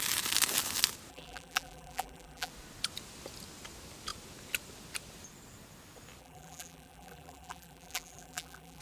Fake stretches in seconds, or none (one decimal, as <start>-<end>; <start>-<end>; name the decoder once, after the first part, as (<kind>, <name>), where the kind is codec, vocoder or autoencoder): 1.1-2.5 (vocoder, BigVGAN v2); 6.2-8.8